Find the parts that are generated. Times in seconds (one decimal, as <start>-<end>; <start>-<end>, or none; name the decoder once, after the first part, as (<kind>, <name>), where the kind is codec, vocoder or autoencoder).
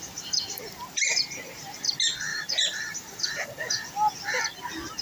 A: 0.0-0.6 (vocoder, BigVGAN v2); 2.3-3.7